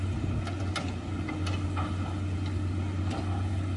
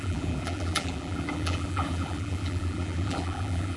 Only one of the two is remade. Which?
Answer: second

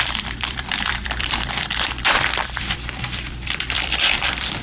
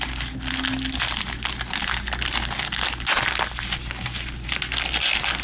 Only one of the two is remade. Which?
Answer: first